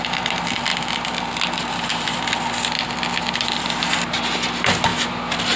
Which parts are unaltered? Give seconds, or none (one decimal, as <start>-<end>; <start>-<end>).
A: 0.0-5.6